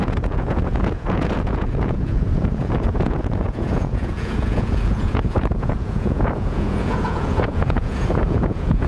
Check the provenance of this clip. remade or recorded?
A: remade